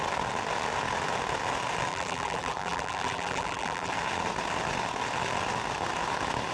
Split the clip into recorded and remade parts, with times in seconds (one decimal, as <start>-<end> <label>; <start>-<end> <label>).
0.0-1.9 recorded; 1.9-3.9 remade; 3.9-6.5 recorded